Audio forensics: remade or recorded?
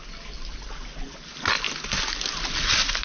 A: recorded